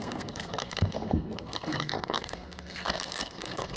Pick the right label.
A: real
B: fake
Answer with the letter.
B